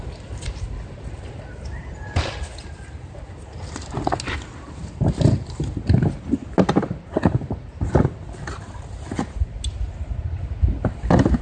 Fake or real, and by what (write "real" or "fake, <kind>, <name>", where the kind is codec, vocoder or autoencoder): real